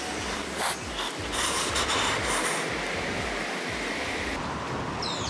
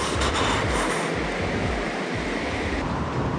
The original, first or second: first